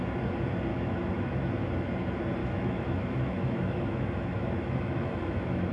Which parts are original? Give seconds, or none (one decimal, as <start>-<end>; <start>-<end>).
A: 0.0-0.7; 1.5-2.4